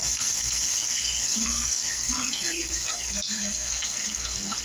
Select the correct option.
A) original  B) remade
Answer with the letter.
B